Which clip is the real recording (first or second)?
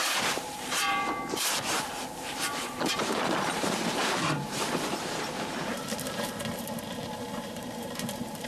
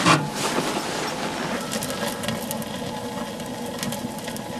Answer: second